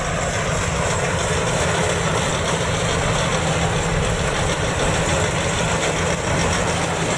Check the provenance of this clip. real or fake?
real